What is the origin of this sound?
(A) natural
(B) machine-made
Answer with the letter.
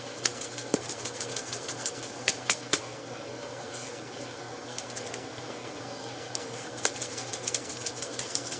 B